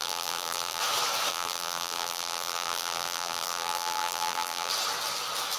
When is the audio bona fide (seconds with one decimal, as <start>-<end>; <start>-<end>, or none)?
0.8-1.3; 4.7-5.6